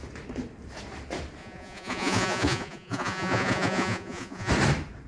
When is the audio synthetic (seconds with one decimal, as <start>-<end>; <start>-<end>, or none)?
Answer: 1.4-4.5

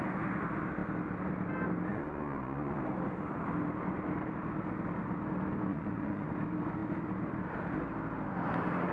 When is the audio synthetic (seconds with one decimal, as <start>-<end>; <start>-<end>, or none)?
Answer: 1.9-2.8; 5.7-6.3

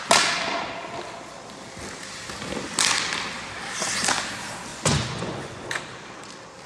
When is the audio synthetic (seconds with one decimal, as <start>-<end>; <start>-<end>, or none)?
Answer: 4.7-5.8

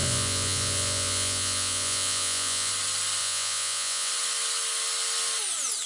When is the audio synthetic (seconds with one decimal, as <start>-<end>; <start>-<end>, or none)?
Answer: 0.0-2.7; 3.2-4.1

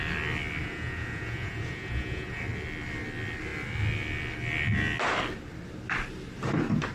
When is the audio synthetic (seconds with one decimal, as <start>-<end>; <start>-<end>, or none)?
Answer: 0.6-2.4

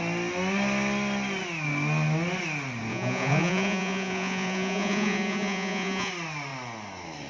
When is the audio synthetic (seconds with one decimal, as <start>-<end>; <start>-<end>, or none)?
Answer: 2.9-6.1

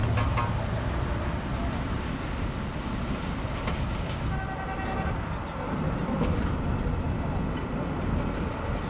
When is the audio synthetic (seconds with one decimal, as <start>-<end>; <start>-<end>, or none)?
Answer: none